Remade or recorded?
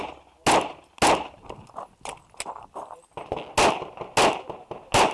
recorded